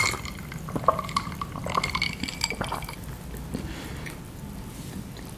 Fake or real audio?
real